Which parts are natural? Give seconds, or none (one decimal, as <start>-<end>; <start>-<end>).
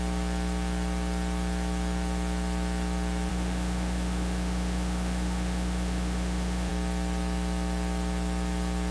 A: 0.0-3.3; 6.7-8.9